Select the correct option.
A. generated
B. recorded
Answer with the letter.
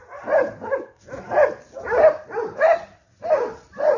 B